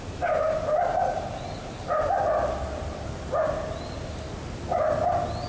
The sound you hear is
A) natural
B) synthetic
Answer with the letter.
A